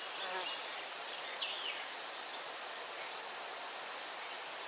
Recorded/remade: recorded